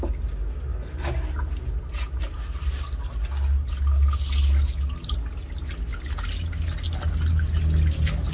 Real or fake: real